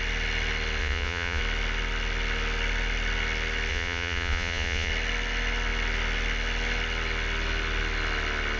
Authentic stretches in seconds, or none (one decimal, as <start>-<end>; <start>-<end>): 0.0-0.8; 1.4-3.7; 4.9-8.6